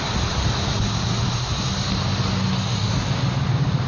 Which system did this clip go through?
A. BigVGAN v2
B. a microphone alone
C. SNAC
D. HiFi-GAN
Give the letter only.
B